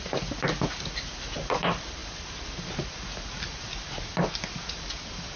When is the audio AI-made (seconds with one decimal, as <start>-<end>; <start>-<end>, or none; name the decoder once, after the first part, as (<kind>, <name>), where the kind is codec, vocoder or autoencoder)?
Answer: none